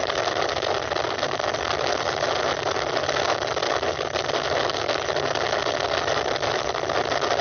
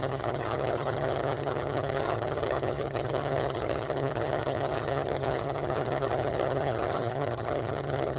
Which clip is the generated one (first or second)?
second